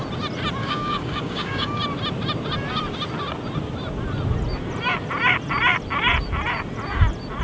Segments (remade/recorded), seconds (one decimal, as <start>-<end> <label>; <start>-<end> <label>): 0.0-0.6 recorded; 0.6-1.8 remade; 1.8-7.4 recorded